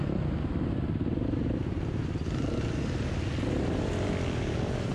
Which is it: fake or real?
real